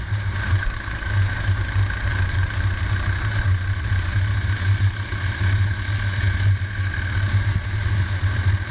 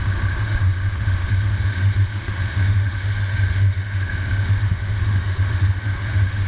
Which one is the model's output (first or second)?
second